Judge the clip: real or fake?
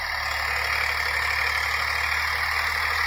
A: real